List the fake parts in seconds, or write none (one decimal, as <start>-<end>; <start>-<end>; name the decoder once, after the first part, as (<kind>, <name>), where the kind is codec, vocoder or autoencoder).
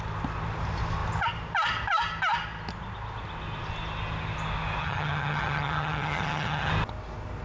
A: 4.8-6.7 (vocoder, HiFi-GAN)